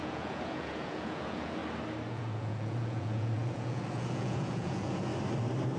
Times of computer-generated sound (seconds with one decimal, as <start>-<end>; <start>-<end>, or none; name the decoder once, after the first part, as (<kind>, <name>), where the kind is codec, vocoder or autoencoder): 0.0-1.6 (vocoder, Vocos); 2.1-5.1